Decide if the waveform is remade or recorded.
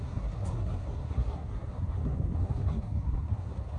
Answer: remade